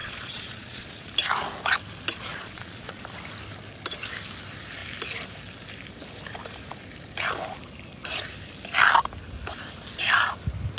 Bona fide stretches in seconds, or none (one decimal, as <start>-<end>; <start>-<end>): 1.1-2.3; 3.0-10.8